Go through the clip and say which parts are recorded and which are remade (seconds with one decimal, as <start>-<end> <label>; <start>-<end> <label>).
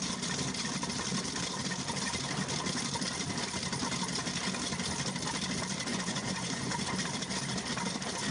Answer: 0.0-5.9 recorded; 5.9-6.8 remade; 6.8-8.3 recorded